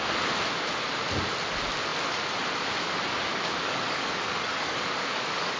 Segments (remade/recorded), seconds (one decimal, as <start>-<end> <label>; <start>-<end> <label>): 0.0-3.3 recorded; 3.3-5.6 remade